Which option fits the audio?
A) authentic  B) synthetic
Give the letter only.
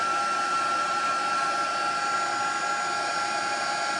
A